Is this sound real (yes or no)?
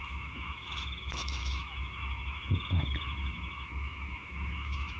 no